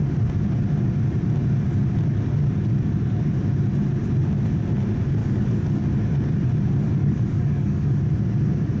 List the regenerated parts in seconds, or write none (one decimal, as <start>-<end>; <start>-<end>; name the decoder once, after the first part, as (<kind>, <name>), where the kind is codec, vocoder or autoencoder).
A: 5.2-5.8 (codec, DAC); 7.0-8.0

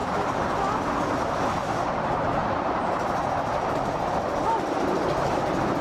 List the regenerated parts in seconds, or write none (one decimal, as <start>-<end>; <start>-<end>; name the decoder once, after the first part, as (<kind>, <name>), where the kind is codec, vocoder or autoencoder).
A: none

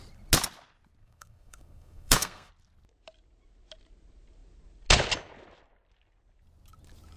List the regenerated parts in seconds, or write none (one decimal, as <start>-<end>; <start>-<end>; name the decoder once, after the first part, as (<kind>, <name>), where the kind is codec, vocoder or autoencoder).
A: 1.0-2.5 (codec, SNAC)